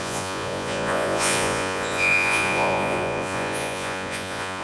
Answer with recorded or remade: remade